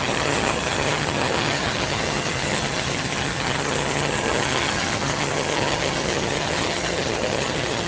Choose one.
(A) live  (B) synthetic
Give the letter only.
B